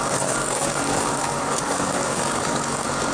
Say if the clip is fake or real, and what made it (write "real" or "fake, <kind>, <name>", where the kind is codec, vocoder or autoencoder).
fake, codec, DAC